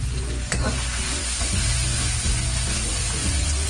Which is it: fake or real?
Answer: fake